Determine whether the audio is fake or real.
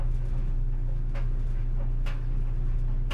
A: real